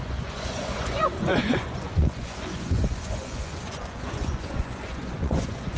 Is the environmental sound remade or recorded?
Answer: remade